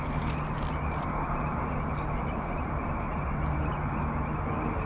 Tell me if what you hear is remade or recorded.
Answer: recorded